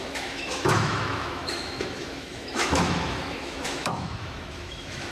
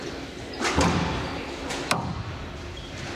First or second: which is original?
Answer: second